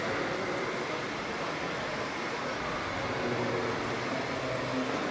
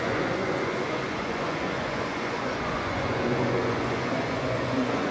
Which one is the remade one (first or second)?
second